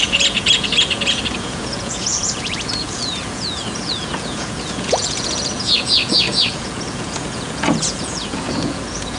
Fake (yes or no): yes